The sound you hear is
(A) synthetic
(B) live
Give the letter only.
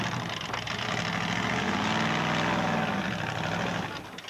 B